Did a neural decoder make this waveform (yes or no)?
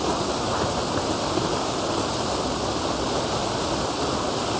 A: no